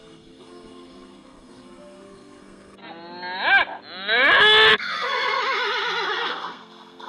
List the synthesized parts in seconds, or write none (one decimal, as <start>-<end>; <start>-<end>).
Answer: 0.0-2.8; 4.7-5.4; 6.1-7.1